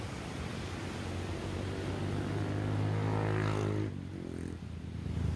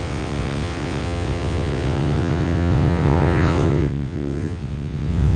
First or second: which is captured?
first